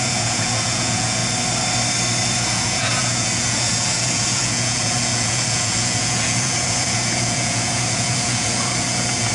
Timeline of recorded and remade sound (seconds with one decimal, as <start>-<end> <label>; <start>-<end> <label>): 0.0-1.2 remade; 1.2-2.4 recorded; 2.4-9.3 remade